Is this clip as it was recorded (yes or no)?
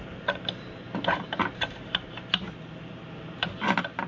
yes